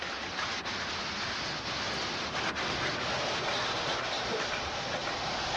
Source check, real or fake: real